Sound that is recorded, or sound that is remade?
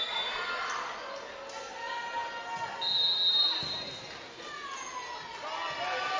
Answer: recorded